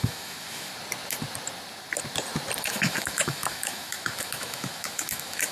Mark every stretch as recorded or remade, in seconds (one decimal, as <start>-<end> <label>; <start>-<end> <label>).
0.0-0.7 remade; 0.7-2.6 recorded; 2.6-5.5 remade